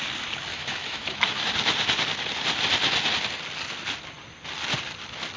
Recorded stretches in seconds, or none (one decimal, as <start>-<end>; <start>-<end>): 0.0-0.5; 1.5-5.4